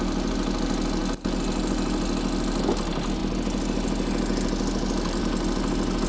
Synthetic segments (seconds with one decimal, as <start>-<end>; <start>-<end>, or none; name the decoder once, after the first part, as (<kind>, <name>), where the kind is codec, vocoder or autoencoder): none